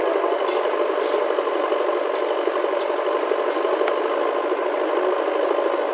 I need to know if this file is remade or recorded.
recorded